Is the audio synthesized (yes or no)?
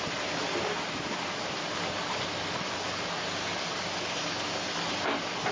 no